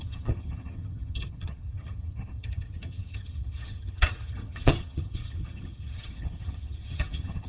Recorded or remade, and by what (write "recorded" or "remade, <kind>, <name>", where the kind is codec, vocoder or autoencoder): remade, vocoder, HiFi-GAN